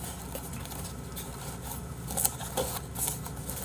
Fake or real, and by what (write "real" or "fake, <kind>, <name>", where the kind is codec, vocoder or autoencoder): real